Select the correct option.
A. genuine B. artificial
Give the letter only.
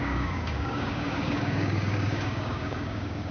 B